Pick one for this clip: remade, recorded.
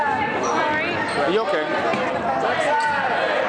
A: recorded